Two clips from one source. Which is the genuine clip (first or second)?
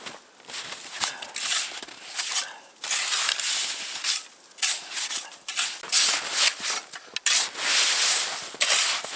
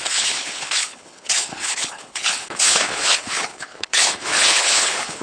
first